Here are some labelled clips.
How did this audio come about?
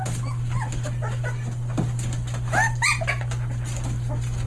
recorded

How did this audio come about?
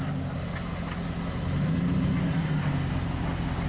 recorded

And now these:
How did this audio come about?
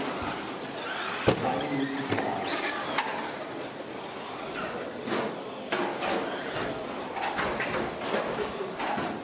recorded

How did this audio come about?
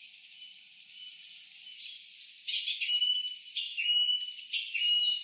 recorded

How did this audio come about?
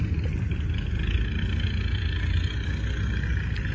recorded